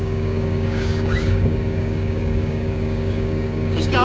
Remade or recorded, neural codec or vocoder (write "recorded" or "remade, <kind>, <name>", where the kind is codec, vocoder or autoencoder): remade, codec, DAC